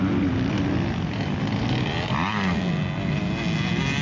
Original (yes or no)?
yes